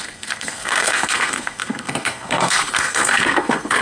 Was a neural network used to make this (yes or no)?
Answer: yes